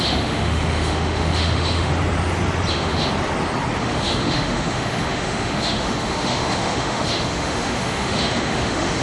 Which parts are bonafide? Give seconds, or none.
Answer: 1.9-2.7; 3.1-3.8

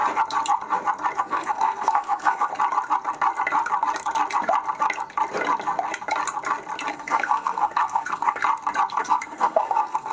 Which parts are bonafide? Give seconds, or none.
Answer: 0.0-1.2; 2.5-6.9; 8.4-8.9